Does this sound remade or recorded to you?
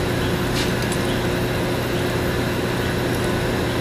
recorded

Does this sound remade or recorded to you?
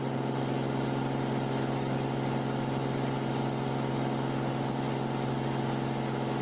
recorded